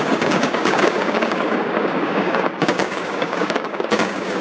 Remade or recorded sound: remade